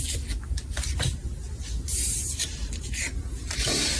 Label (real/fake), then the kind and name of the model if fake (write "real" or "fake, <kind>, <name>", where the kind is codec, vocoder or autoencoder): real